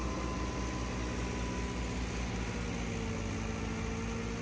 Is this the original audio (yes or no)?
yes